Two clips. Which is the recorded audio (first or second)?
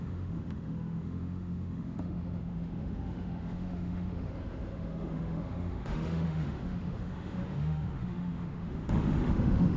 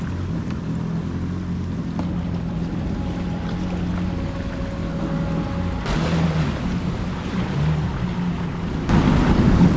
second